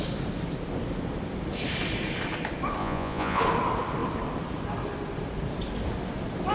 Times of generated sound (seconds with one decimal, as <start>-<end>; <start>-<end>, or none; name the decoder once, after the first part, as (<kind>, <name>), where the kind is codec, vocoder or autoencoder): 2.8-3.4 (vocoder, Vocos)